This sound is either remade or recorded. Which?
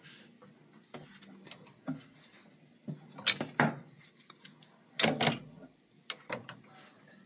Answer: recorded